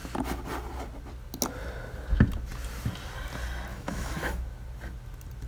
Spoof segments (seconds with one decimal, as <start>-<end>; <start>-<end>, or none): 3.7-4.4